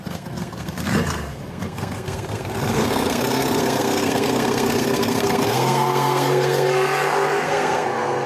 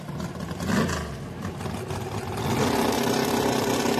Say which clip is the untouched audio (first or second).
second